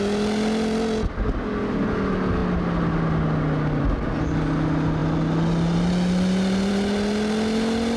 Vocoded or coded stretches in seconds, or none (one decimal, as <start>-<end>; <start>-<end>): none

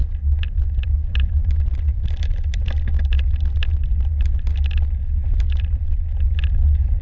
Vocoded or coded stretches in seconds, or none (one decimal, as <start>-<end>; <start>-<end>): none

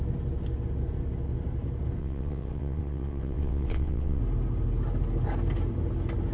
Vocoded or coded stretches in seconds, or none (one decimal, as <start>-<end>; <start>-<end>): 2.0-4.2

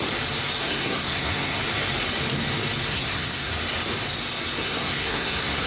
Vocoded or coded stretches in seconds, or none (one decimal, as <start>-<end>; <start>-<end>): 0.6-1.6; 2.9-3.5; 4.6-5.7

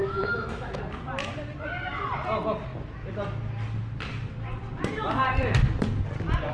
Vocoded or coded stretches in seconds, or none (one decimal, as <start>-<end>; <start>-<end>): 0.0-0.8

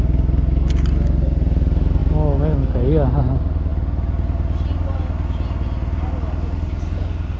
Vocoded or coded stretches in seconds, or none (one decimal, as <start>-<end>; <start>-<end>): none

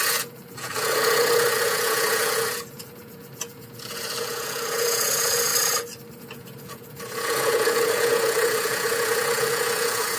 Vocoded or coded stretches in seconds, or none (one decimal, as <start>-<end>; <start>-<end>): 0.0-5.5; 6.2-10.2